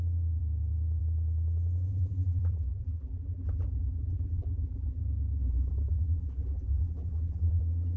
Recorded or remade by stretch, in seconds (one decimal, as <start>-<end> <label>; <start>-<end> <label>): 0.0-1.9 recorded; 1.9-5.0 remade; 5.0-5.4 recorded; 5.4-7.6 remade; 7.6-8.0 recorded

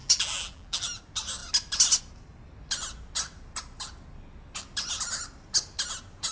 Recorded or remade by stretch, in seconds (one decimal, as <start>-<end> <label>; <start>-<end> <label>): 0.0-1.0 remade; 1.0-6.3 recorded